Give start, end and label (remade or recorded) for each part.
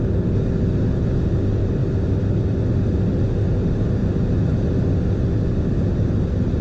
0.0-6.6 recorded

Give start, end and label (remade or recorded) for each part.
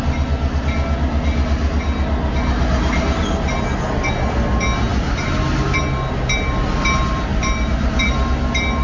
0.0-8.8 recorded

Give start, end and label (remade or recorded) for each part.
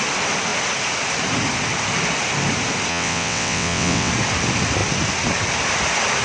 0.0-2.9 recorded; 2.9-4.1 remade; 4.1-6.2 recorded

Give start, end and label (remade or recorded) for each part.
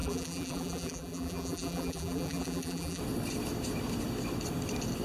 0.0-3.0 remade; 3.0-5.0 recorded